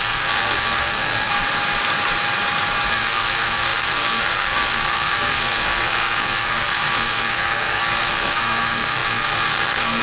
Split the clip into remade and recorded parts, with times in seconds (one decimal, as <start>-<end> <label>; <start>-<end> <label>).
0.0-1.3 remade; 1.3-2.9 recorded; 2.9-10.0 remade